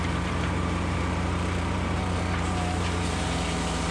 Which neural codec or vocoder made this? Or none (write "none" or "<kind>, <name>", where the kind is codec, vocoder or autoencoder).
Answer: vocoder, BigVGAN v2